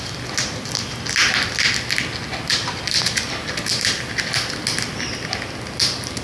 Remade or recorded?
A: recorded